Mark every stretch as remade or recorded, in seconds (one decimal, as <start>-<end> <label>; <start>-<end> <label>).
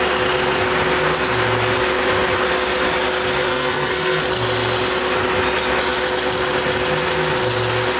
0.0-3.5 recorded; 3.5-4.2 remade; 4.2-8.0 recorded